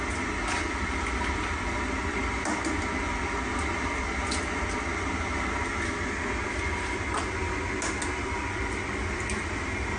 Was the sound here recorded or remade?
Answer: recorded